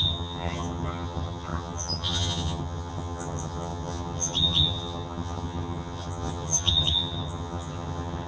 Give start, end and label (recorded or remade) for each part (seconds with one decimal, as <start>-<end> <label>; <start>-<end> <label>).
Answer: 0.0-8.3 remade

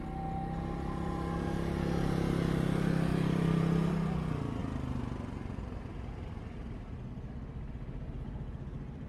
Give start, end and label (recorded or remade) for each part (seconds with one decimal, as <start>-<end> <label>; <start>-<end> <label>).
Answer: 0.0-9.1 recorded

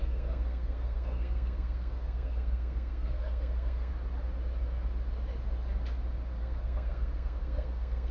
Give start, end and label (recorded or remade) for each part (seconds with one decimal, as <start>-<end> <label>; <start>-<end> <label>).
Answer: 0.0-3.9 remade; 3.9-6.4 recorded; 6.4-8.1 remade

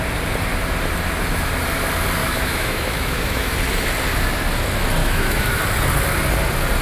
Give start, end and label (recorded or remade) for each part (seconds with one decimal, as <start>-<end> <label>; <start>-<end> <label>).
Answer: 0.0-2.2 recorded; 2.2-3.5 remade; 3.5-5.0 recorded; 5.0-5.6 remade; 5.6-6.8 recorded

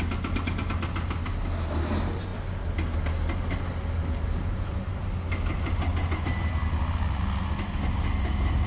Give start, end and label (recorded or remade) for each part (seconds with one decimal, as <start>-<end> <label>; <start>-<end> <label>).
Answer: 0.0-8.7 recorded

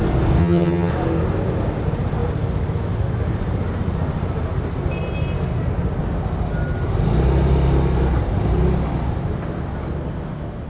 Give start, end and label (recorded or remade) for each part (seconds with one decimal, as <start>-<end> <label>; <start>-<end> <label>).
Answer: 0.0-0.4 recorded; 0.4-0.9 remade; 0.9-10.7 recorded